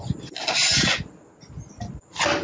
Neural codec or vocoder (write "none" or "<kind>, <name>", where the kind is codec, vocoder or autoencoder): none